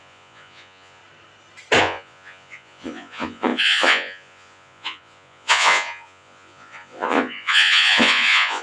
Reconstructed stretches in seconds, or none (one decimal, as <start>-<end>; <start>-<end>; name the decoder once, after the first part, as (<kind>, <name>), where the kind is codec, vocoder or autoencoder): 0.0-1.0 (vocoder, Vocos); 1.8-8.6